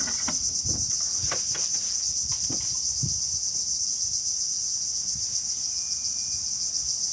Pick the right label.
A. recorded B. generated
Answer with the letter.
A